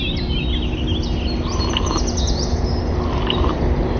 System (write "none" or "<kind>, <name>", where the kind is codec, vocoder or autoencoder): none